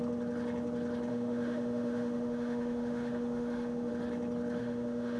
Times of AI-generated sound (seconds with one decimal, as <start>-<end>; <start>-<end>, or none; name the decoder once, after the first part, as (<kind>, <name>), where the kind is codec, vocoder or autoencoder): 1.1-3.9 (autoencoder, DAC-VAE); 4.6-5.2